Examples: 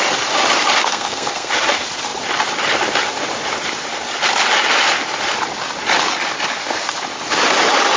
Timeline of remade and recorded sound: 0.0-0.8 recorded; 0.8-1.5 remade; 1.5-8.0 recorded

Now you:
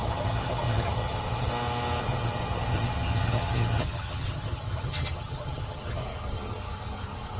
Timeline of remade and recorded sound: 0.0-1.5 remade; 1.5-2.0 recorded; 2.0-7.4 remade

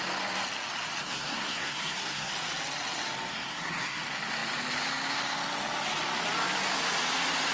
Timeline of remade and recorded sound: 0.0-1.0 recorded; 1.0-2.3 remade; 2.3-3.3 recorded; 3.3-4.0 remade; 4.0-7.5 recorded

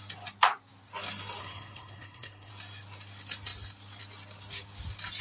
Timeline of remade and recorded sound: 0.0-1.4 recorded; 1.4-2.5 remade; 2.5-5.2 recorded

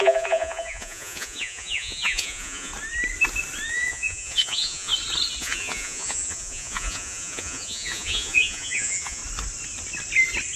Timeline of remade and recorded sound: 0.0-2.7 remade; 2.7-3.7 recorded; 3.7-4.9 remade; 4.9-5.4 recorded; 5.4-9.2 remade; 9.2-10.6 recorded

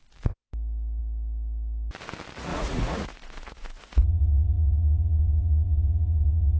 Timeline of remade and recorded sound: 0.0-2.5 recorded; 2.5-6.6 remade